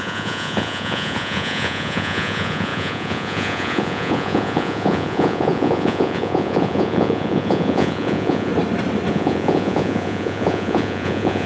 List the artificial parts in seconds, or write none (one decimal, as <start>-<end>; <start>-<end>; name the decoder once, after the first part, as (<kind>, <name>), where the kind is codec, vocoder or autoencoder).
0.0-8.5 (vocoder, Vocos); 9.1-11.5